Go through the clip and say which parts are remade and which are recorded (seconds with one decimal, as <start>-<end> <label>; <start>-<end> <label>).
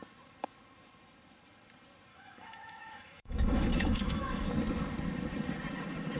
0.0-2.1 recorded; 2.1-4.5 remade; 4.5-6.2 recorded